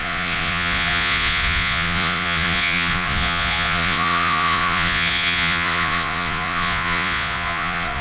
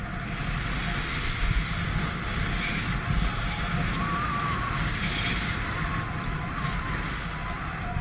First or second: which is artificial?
first